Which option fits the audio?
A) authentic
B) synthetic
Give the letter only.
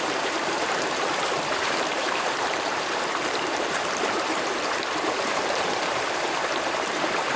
B